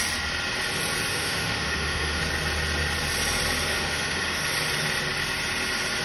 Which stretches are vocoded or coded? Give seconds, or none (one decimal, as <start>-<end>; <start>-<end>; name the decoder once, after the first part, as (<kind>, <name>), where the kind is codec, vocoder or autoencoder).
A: 1.1-2.2 (autoencoder, DAC-VAE); 3.7-4.4